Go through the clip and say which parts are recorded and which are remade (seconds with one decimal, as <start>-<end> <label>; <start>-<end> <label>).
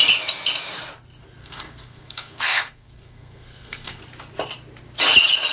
0.0-1.4 recorded; 1.4-4.0 remade; 4.0-5.5 recorded